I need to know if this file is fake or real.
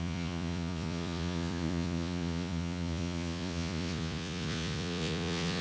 fake